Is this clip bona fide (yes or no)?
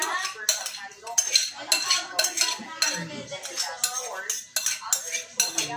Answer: yes